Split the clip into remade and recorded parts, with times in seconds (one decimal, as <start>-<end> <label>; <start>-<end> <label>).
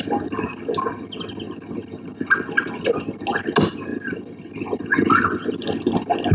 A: 0.0-6.3 recorded